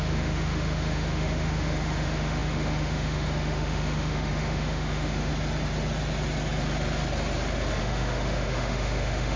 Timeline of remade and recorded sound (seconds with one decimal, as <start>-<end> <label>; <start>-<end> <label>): 0.0-5.3 remade; 5.3-7.8 recorded; 7.8-9.4 remade